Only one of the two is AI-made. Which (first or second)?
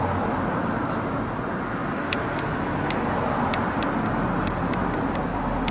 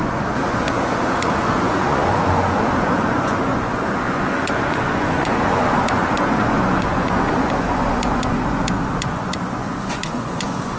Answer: second